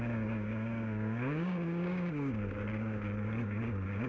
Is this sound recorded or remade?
remade